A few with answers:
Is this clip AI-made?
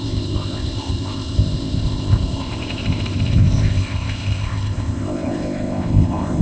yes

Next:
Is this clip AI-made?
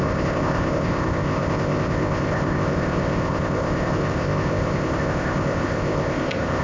yes